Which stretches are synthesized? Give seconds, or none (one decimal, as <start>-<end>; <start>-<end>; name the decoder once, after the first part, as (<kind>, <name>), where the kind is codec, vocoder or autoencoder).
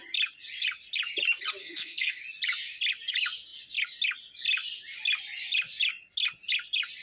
1.6-2.2 (codec, SNAC)